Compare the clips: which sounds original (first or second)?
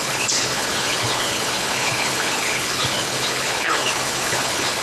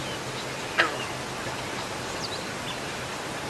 second